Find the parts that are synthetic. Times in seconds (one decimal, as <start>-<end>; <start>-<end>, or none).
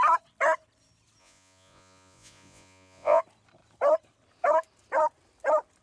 1.2-3.2